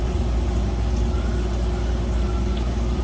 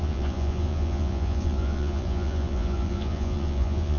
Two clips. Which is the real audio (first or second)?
first